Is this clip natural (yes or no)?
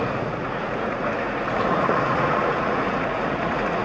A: no